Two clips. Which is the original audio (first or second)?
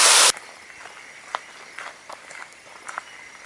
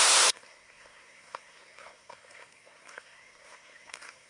first